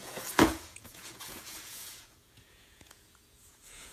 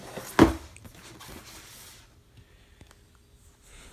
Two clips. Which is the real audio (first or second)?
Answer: second